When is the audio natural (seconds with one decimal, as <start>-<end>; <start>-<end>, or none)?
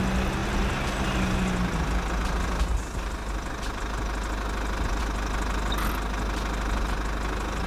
0.0-7.7